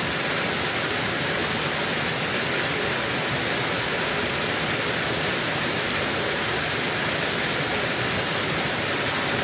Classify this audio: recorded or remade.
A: recorded